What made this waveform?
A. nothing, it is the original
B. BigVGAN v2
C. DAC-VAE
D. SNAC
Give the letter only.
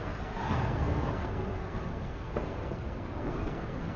D